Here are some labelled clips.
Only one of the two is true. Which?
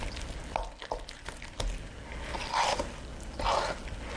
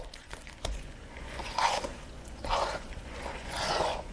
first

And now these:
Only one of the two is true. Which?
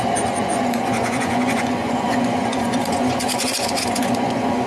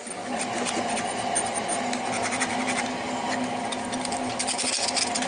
second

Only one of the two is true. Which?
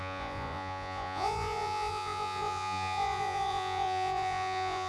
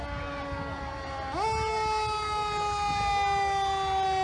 second